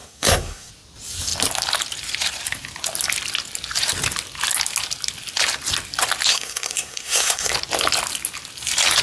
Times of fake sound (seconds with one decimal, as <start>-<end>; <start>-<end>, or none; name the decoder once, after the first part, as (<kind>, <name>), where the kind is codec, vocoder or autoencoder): 0.0-0.7 (codec, SNAC); 6.3-7.5